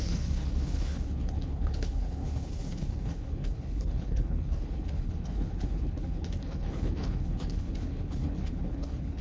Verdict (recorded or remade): remade